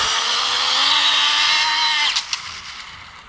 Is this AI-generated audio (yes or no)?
no